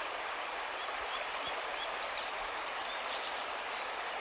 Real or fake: real